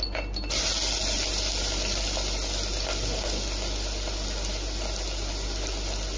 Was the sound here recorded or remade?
recorded